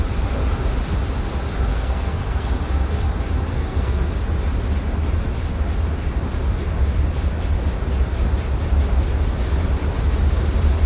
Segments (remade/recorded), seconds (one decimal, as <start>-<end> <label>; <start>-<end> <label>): 0.0-1.7 recorded; 1.7-2.5 remade; 2.5-3.5 recorded; 3.5-4.1 remade; 4.1-10.9 recorded

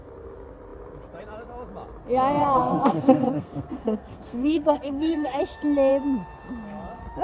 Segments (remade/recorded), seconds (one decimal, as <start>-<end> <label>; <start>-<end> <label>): 0.0-2.4 recorded; 2.4-5.4 remade; 5.4-7.2 recorded

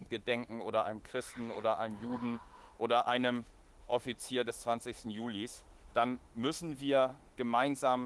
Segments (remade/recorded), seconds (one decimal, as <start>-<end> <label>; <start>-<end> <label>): 0.0-8.1 remade

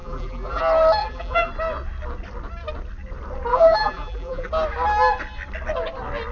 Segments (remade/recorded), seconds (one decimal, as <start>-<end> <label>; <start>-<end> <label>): 0.0-0.6 remade; 0.6-1.0 recorded; 1.0-1.5 remade; 1.5-3.5 recorded; 3.5-4.5 remade; 4.5-6.3 recorded